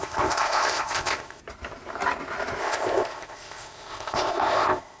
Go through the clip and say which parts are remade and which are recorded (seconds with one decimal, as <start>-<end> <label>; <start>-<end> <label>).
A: 0.0-1.4 remade; 1.4-2.6 recorded; 2.6-5.0 remade

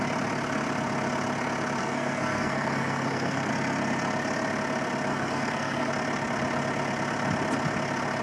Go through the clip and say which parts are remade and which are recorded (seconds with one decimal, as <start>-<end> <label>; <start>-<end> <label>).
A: 0.0-1.8 recorded; 1.8-3.5 remade; 3.5-5.1 recorded; 5.1-5.9 remade; 5.9-8.2 recorded

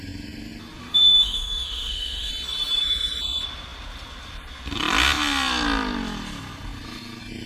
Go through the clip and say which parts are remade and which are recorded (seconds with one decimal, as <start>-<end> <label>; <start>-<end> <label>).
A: 0.0-0.8 recorded; 0.8-2.3 remade; 2.3-7.5 recorded